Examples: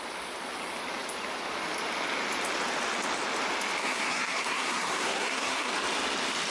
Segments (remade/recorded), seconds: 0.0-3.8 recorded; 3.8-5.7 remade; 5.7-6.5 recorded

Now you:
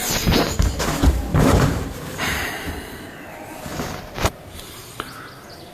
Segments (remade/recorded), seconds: 0.0-1.3 recorded; 1.3-2.7 remade; 2.7-3.7 recorded; 3.7-5.1 remade; 5.1-5.7 recorded

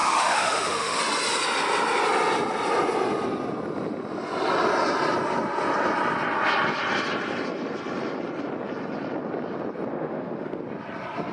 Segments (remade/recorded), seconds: 0.0-1.0 remade; 1.0-9.9 recorded; 9.9-10.6 remade; 10.6-11.3 recorded

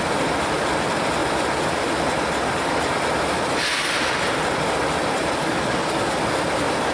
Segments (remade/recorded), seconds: 0.0-5.4 recorded; 5.4-6.1 remade; 6.1-6.9 recorded

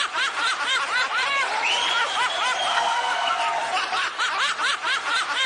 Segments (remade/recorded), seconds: 0.0-2.7 recorded; 2.7-3.4 remade; 3.4-5.5 recorded

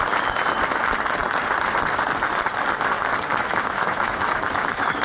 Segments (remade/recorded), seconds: 0.0-3.3 recorded; 3.3-5.0 remade

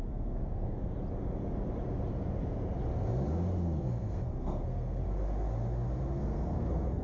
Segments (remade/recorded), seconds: 0.0-0.9 remade; 0.9-3.8 recorded; 3.8-5.0 remade; 5.0-6.2 recorded; 6.2-7.0 remade

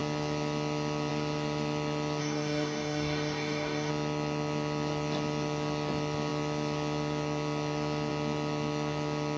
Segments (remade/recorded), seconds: 0.0-2.2 recorded; 2.2-3.9 remade; 3.9-9.4 recorded